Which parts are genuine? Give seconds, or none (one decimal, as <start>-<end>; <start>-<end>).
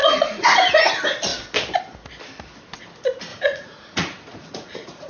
0.6-3.3